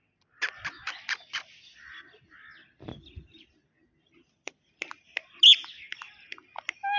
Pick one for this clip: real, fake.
real